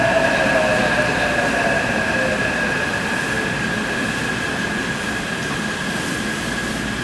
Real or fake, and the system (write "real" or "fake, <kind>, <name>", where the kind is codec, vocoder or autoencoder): real